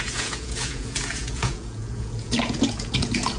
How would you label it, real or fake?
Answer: fake